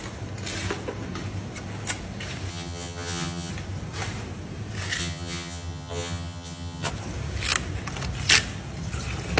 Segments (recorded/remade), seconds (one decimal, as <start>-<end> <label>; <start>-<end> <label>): 0.0-2.5 recorded; 2.5-3.5 remade; 3.5-5.0 recorded; 5.0-6.9 remade; 6.9-9.4 recorded